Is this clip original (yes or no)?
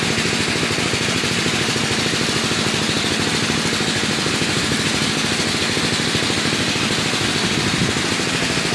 yes